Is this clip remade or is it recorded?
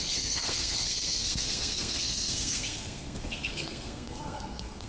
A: remade